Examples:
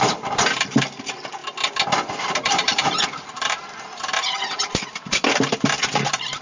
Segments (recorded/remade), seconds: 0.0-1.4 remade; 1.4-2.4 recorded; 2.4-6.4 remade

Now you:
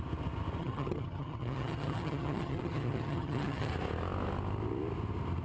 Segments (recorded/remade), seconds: 0.0-0.6 recorded; 0.6-3.7 remade; 3.7-5.4 recorded

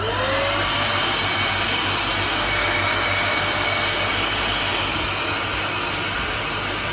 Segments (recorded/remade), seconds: 0.0-6.9 recorded

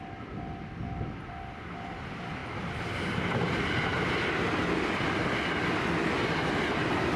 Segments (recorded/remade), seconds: 0.0-7.2 recorded